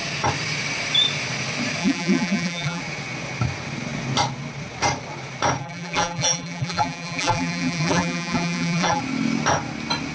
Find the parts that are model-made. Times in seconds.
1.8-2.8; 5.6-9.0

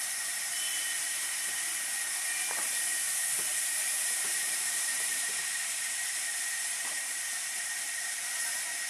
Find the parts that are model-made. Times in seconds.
0.7-1.5; 3.5-8.2

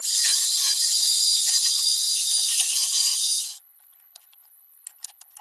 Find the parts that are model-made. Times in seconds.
0.0-5.4

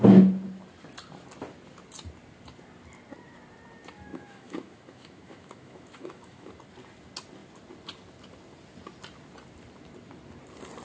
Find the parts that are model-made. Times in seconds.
4.1-6.5

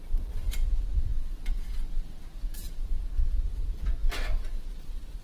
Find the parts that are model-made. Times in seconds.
none

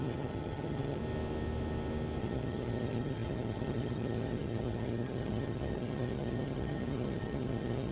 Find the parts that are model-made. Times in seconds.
0.0-1.0; 2.2-7.9

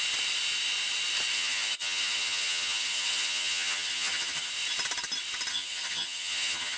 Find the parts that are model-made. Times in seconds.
1.3-4.5; 5.5-6.8

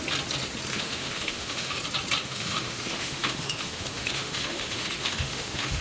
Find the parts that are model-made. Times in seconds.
0.7-1.8; 2.2-5.8